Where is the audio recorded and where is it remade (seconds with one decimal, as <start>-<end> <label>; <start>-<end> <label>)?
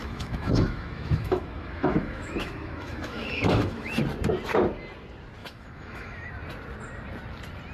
0.0-4.0 remade; 4.0-5.4 recorded; 5.4-6.3 remade; 6.3-7.7 recorded